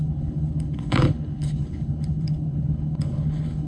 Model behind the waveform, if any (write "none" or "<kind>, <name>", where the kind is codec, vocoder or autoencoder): codec, HILCodec